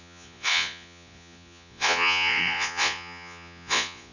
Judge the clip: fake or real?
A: fake